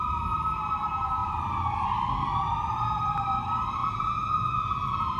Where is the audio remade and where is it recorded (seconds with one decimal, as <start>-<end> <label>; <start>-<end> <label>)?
0.0-3.8 recorded; 3.8-5.2 remade